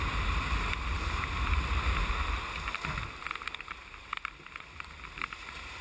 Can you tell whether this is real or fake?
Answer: real